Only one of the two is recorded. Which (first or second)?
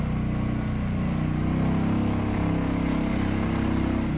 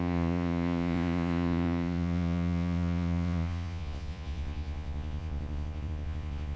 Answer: first